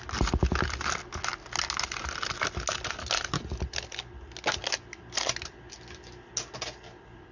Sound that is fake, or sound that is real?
real